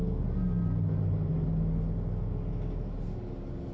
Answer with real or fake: real